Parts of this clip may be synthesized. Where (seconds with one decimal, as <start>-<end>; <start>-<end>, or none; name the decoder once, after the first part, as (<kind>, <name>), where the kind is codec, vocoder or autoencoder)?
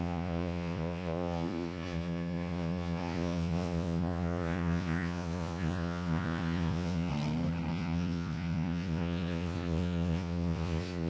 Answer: 0.0-7.1 (vocoder, Vocos); 7.7-11.1